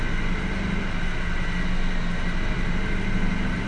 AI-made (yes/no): no